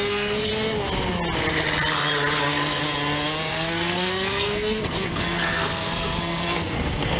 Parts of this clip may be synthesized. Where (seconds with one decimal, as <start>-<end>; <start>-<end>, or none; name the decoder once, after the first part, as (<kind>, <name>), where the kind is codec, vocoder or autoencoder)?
0.0-0.5 (codec, SNAC); 2.4-2.8; 3.5-7.2